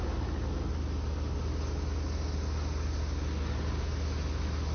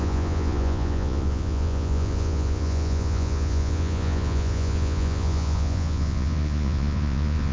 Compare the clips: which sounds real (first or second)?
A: first